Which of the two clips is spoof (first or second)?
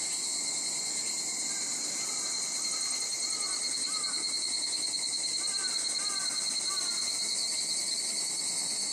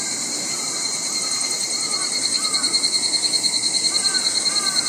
second